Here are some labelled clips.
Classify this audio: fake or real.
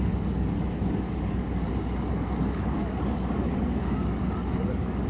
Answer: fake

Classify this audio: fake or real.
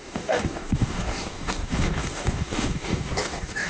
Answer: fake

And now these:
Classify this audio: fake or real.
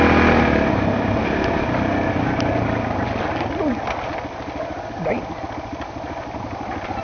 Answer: real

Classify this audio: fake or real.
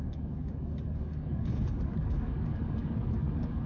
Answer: fake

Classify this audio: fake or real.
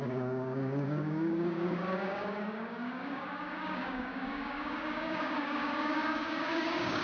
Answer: fake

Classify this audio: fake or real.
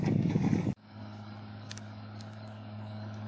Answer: fake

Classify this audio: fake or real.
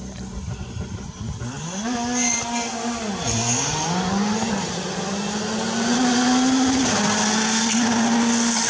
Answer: real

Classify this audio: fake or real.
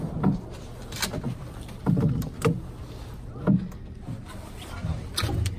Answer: real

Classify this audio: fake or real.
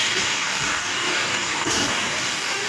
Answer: fake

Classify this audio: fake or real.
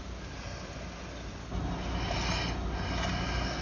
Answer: real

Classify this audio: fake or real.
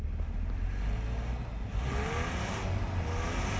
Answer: real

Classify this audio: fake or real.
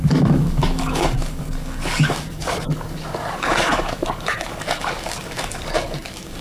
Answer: fake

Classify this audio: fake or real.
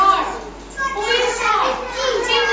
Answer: real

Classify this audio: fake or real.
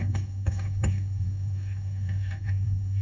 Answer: fake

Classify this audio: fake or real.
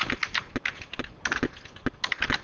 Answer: real